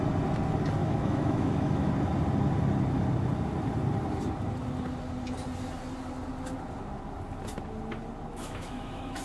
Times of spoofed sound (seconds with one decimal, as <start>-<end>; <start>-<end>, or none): 0.8-1.9; 8.3-9.2